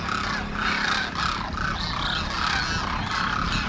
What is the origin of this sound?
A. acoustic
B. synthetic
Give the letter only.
A